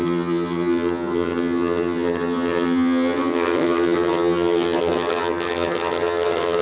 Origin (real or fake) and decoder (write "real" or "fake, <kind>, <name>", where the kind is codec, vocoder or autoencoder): fake, vocoder, HiFi-GAN